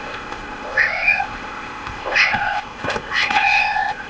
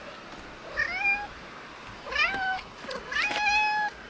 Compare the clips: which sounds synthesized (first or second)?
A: first